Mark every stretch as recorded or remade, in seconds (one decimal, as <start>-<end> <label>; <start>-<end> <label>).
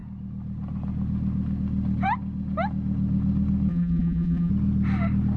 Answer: 0.0-3.7 recorded; 3.7-4.5 remade; 4.5-5.4 recorded